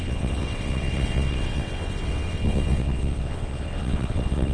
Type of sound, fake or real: fake